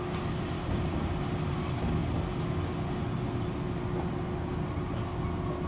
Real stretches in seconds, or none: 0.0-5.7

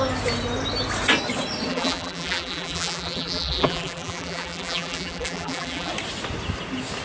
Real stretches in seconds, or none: 0.0-1.7; 5.9-7.0

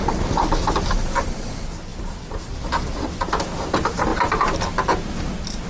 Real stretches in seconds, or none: 0.0-1.9; 3.3-5.7

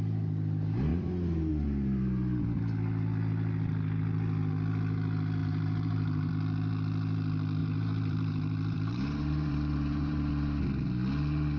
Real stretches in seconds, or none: 0.0-5.4; 6.3-7.6; 10.3-11.6